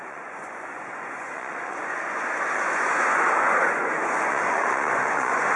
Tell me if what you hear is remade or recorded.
remade